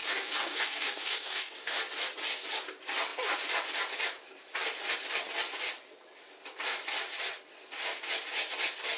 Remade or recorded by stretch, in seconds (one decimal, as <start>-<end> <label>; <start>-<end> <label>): 0.0-1.8 remade; 1.8-9.0 recorded